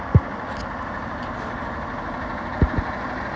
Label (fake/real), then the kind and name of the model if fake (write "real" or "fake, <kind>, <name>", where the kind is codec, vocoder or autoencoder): real